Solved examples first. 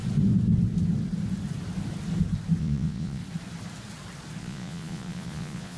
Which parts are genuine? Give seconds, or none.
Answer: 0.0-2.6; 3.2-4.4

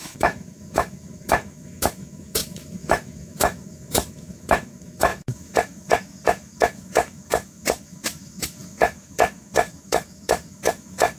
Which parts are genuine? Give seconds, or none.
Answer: none

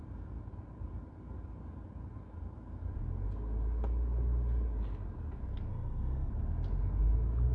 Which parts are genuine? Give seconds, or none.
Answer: 0.0-5.7; 6.3-7.5

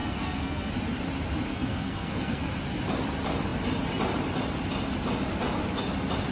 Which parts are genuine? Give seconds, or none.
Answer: 0.7-1.5; 2.5-6.3

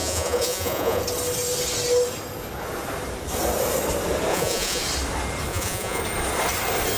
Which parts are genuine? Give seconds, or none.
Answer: 1.0-4.3; 4.8-5.5; 6.0-7.0